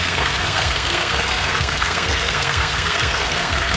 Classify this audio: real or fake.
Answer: fake